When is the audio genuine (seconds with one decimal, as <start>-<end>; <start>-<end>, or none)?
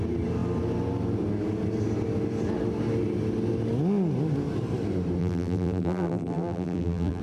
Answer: 0.0-5.2